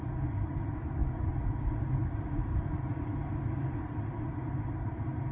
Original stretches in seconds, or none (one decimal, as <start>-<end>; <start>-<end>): 0.0-5.3